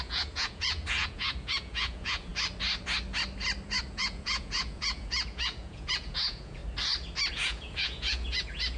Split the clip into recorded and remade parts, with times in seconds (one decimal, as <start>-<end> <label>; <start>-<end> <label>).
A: 0.0-2.3 remade; 2.3-3.8 recorded; 3.8-6.6 remade; 6.6-7.3 recorded; 7.3-8.8 remade